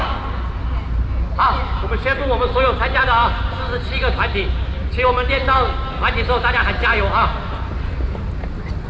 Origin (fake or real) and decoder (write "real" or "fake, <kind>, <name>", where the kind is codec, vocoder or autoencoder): real